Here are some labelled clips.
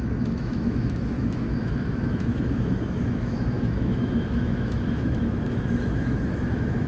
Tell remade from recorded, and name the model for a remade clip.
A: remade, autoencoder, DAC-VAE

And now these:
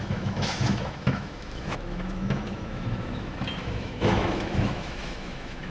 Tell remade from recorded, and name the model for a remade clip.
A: remade, autoencoder, DAC-VAE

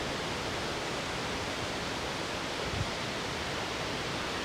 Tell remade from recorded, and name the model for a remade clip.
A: recorded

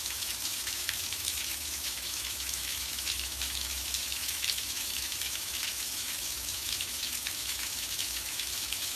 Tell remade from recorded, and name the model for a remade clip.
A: remade, autoencoder, DAC-VAE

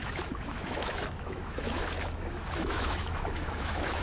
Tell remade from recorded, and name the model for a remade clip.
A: remade, autoencoder, DAC-VAE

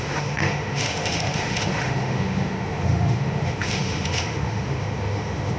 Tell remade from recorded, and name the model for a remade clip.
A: remade, autoencoder, DAC-VAE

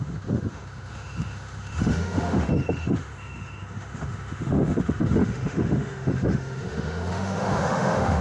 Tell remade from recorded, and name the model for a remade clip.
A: remade, autoencoder, DAC-VAE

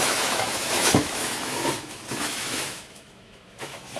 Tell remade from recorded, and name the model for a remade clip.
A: remade, autoencoder, DAC-VAE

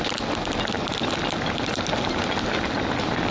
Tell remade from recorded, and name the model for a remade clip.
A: recorded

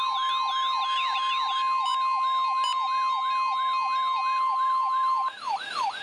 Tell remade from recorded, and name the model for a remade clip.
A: recorded